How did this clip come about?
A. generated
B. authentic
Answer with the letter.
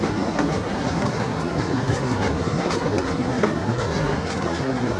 A